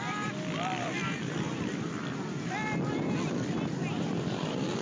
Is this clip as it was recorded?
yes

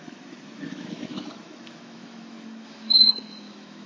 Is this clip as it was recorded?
no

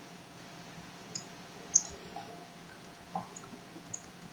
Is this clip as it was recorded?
no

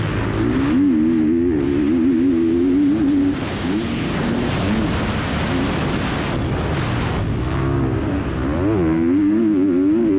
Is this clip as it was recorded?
yes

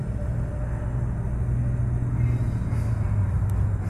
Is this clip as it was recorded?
yes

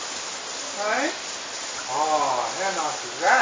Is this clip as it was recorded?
yes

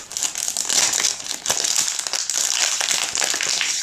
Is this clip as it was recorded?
yes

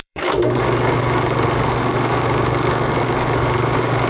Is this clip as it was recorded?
no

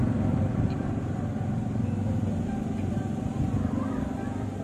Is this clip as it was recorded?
no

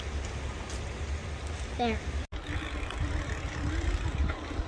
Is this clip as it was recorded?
yes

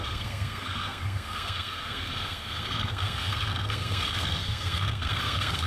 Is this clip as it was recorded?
no